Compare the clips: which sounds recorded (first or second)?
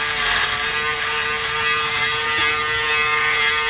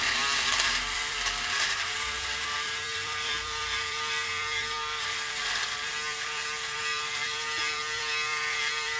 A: first